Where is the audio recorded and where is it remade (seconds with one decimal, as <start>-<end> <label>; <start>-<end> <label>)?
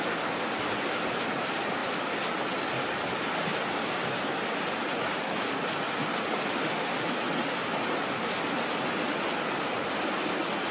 0.0-10.7 recorded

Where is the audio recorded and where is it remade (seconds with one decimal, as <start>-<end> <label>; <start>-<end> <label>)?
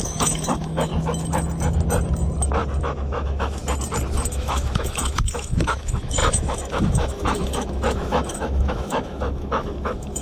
0.0-0.9 remade; 0.9-2.8 recorded; 2.8-3.6 remade; 3.6-4.3 recorded; 4.3-10.2 remade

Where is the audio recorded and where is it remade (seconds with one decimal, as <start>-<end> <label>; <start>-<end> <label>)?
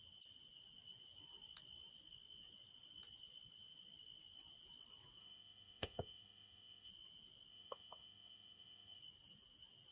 0.0-5.2 recorded; 5.2-6.9 remade; 6.9-7.5 recorded; 7.5-9.0 remade; 9.0-9.9 recorded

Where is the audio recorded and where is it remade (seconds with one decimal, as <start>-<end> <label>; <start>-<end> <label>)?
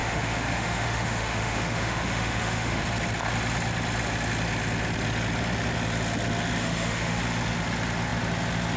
0.0-2.8 remade; 2.8-6.6 recorded; 6.6-7.2 remade; 7.2-8.8 recorded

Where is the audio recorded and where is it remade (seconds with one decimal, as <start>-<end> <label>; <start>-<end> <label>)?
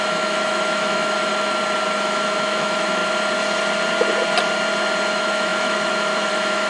0.0-1.3 remade; 1.3-2.0 recorded; 2.0-3.0 remade; 3.0-5.1 recorded; 5.1-6.7 remade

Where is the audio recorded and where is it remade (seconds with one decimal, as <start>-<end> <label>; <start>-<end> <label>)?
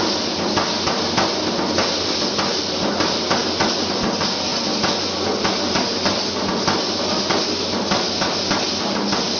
0.0-9.4 recorded